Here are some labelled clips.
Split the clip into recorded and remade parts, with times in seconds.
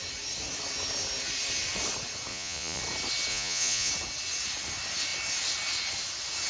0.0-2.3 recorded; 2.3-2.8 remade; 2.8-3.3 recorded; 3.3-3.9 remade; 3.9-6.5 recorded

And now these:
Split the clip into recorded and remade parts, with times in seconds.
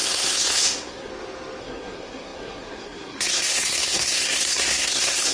0.0-1.1 remade; 1.1-1.6 recorded; 1.6-5.3 remade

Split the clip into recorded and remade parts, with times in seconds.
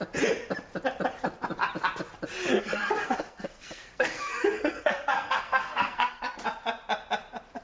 0.0-2.5 recorded; 2.5-6.4 remade; 6.4-7.6 recorded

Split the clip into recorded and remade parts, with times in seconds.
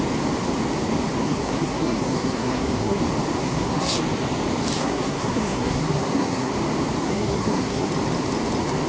0.0-1.2 recorded; 1.2-3.0 remade; 3.0-3.4 recorded; 3.4-4.0 remade; 4.0-4.8 recorded; 4.8-6.5 remade; 6.5-7.0 recorded; 7.0-7.9 remade; 7.9-8.9 recorded